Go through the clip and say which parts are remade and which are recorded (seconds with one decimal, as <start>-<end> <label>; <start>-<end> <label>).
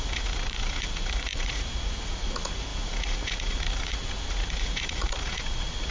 0.0-5.9 remade